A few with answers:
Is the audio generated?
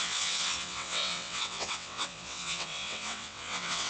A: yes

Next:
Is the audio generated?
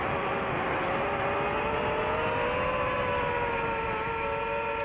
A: no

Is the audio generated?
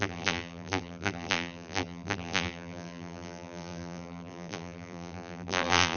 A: yes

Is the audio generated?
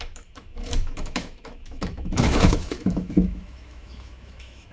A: yes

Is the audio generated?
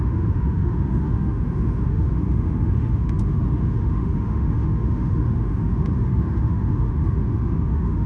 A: yes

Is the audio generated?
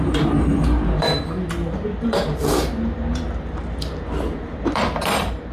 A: yes